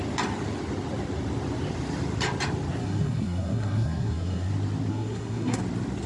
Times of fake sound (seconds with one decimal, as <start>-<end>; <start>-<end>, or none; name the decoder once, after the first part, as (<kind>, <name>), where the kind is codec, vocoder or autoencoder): 2.8-4.5 (codec, SNAC); 4.9-5.6